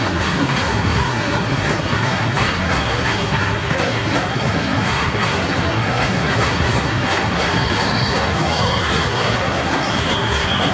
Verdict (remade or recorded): remade